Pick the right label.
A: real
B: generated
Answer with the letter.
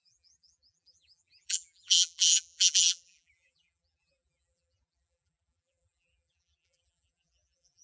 B